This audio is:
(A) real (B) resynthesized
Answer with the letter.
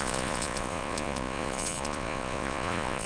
B